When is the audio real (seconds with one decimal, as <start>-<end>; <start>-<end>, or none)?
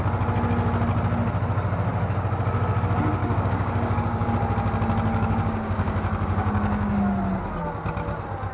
0.0-3.2; 4.3-5.1; 7.0-8.5